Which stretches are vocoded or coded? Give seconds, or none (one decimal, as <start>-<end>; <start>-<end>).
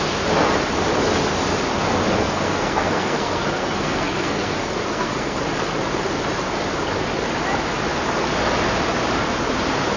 2.1-5.4